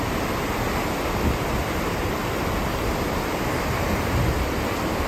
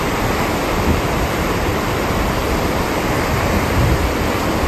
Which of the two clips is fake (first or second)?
second